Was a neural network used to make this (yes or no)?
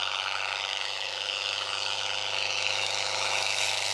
yes